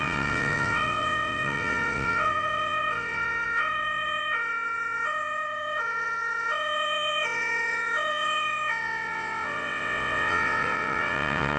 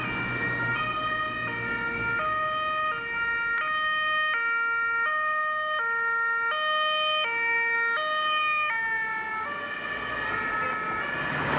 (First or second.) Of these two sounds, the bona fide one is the second